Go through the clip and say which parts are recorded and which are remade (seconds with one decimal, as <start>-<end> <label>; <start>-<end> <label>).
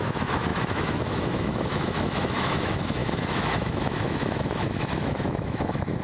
0.0-6.0 remade